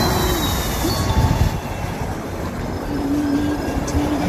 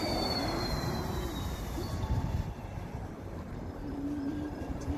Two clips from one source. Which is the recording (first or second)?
first